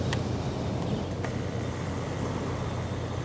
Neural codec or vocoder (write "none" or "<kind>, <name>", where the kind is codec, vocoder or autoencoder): none